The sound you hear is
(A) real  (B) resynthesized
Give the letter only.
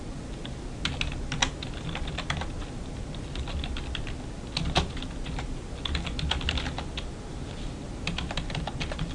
A